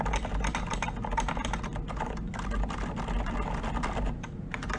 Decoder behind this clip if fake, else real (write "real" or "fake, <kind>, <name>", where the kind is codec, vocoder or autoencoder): real